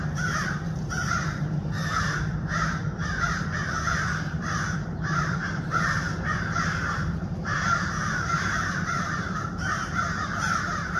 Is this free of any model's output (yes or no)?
no